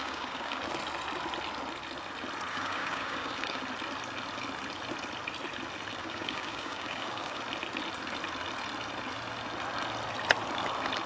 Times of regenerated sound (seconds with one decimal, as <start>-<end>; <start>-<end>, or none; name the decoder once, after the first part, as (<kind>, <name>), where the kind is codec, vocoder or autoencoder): 0.0-0.6 (codec, DAC); 2.5-3.6; 6.0-7.4